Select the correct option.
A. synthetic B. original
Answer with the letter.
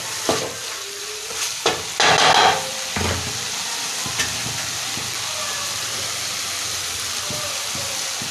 B